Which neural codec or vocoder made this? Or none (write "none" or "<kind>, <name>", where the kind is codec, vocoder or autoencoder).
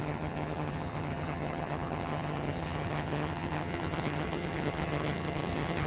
vocoder, HiFi-GAN